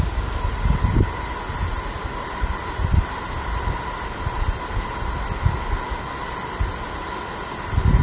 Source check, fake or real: real